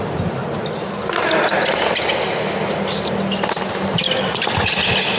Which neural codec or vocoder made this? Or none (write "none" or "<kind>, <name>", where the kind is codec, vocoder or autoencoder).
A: none